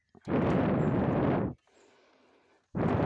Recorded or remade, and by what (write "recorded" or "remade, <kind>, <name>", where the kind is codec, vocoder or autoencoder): remade, vocoder, BigVGAN v2